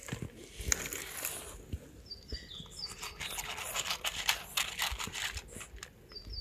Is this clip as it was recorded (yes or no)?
yes